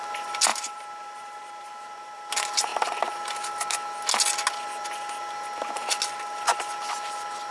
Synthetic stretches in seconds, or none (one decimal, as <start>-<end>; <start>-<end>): 0.5-2.3